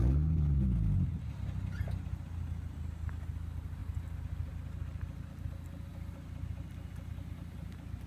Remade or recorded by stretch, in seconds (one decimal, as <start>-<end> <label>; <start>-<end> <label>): 0.0-8.1 recorded